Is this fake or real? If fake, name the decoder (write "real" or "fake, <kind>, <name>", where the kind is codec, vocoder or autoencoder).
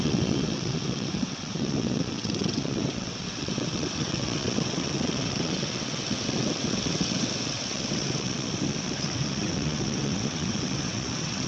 fake, vocoder, WaveNeXt